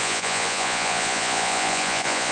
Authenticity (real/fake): fake